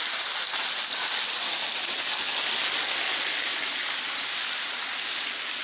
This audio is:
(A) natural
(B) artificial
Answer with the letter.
A